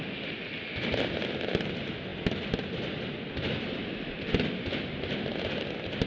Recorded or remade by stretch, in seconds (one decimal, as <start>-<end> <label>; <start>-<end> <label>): 0.0-6.1 recorded